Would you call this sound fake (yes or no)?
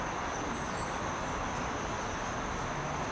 no